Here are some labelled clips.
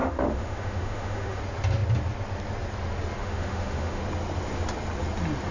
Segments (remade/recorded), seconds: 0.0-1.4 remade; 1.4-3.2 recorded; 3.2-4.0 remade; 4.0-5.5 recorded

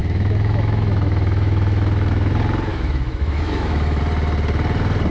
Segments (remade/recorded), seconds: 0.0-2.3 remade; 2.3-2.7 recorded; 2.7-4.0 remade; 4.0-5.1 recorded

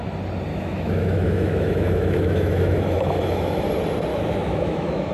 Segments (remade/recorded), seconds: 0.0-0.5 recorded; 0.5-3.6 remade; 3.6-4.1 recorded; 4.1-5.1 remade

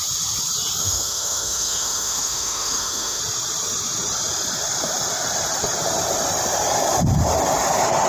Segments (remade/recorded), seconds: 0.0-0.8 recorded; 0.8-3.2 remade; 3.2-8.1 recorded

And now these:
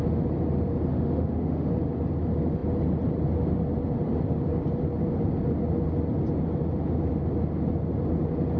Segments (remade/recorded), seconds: 0.0-0.9 recorded; 0.9-1.7 remade; 1.7-8.6 recorded

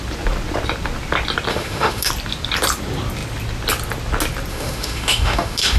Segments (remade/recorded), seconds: 0.0-1.5 recorded; 1.5-2.1 remade; 2.1-4.5 recorded; 4.5-5.8 remade

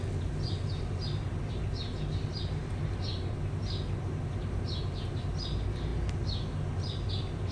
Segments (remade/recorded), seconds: 0.0-7.5 recorded

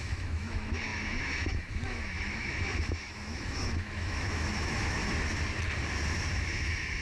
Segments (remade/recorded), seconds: 0.0-5.0 remade; 5.0-6.3 recorded; 6.3-7.0 remade